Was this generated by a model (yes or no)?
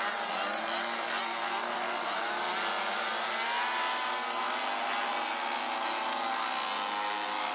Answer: no